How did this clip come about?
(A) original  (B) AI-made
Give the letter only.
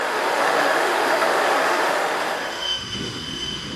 B